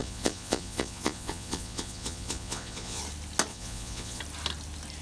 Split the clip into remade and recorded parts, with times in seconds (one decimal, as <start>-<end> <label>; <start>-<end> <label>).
0.0-3.0 remade; 3.0-3.5 recorded; 3.5-4.2 remade; 4.2-5.0 recorded